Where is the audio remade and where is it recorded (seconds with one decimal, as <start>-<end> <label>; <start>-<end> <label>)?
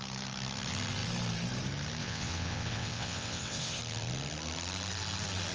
0.0-2.0 recorded; 2.0-3.8 remade; 3.8-5.5 recorded